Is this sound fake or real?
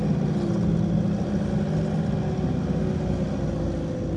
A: real